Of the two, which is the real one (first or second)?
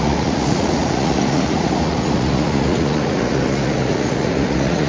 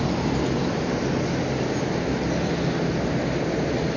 second